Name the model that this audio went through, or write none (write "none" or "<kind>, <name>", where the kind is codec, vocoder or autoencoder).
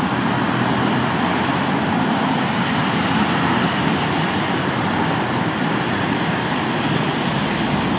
none